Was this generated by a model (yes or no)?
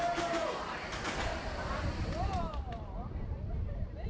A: yes